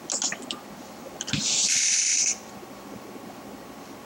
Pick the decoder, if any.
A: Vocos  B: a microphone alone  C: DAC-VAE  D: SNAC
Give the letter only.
B